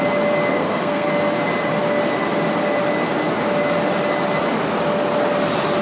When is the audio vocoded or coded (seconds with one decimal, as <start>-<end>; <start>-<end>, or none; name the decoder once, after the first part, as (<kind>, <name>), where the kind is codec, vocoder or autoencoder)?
0.5-1.1 (codec, SNAC)